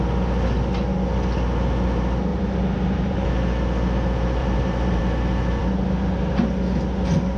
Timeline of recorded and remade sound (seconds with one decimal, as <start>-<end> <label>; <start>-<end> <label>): 0.0-2.3 recorded; 2.3-3.3 remade; 3.3-4.4 recorded; 4.4-5.0 remade; 5.0-7.4 recorded